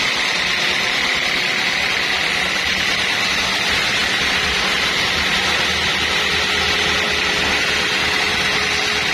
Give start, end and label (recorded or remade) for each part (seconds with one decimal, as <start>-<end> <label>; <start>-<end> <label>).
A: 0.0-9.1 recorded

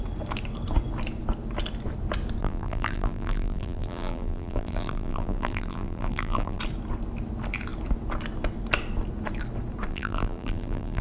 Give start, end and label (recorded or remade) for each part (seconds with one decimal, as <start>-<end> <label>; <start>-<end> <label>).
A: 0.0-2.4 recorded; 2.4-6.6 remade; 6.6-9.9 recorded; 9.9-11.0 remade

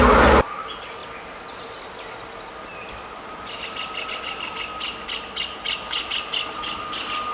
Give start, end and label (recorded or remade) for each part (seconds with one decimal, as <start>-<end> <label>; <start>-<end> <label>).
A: 0.0-7.3 recorded

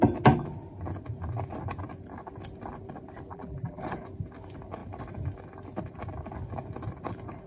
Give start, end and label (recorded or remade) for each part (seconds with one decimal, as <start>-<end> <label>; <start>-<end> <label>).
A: 0.0-3.3 recorded; 3.3-3.8 remade; 3.8-7.5 recorded

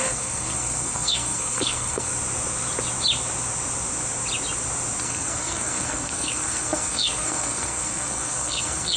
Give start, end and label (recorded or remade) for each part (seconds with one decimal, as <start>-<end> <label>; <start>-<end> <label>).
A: 0.0-2.1 remade; 2.1-5.0 recorded; 5.0-9.0 remade

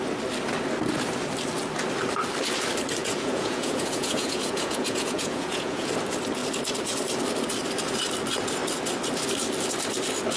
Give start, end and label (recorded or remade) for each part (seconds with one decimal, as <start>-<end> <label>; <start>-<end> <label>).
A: 0.0-3.0 recorded; 3.0-5.9 remade; 5.9-10.4 recorded